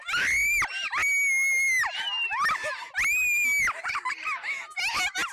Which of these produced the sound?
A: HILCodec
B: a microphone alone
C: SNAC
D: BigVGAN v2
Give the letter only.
B